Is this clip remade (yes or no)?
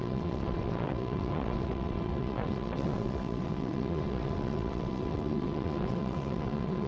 yes